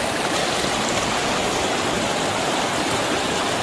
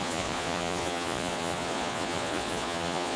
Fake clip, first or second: second